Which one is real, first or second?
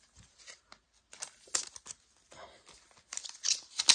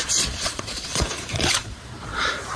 first